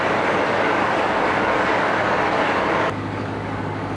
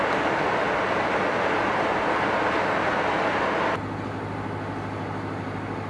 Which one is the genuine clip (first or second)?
second